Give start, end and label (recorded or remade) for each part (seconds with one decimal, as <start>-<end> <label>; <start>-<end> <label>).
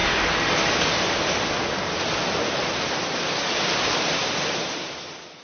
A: 0.0-5.4 recorded